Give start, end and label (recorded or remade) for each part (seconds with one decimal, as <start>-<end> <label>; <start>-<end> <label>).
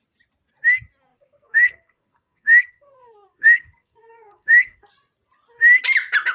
0.0-1.1 recorded; 1.1-4.9 remade; 4.9-6.3 recorded